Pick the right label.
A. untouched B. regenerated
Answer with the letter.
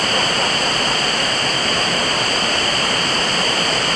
B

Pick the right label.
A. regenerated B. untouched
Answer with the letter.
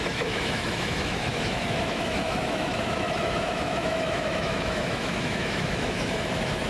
A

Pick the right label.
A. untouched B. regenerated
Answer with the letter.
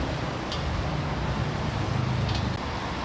A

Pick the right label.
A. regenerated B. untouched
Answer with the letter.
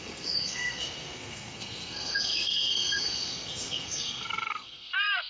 A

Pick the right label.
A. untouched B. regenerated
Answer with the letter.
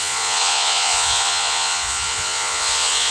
B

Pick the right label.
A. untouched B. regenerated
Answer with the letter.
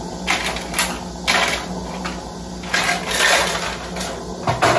A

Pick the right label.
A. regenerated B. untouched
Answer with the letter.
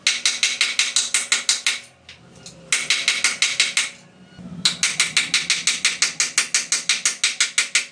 B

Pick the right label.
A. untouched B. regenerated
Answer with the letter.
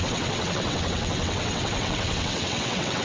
B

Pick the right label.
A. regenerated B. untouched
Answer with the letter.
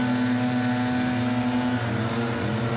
B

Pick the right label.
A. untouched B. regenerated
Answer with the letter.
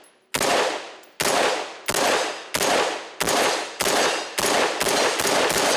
A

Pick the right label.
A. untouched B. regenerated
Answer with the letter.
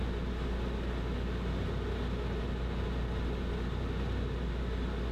A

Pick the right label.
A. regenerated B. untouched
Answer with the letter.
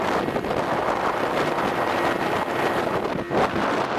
B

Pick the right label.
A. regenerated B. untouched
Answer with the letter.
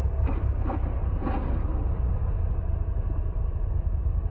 B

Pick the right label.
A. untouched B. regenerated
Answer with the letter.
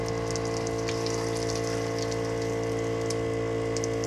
A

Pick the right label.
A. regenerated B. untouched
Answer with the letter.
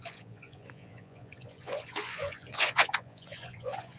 A